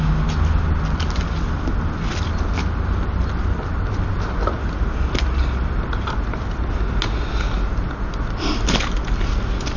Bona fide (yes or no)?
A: yes